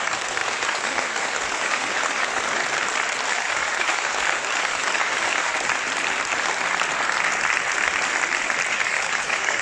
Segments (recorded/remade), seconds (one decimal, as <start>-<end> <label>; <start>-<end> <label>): 0.0-2.6 remade; 2.6-3.3 recorded; 3.3-5.5 remade; 5.5-8.7 recorded; 8.7-9.6 remade